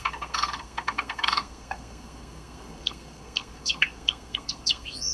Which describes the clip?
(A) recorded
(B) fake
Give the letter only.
B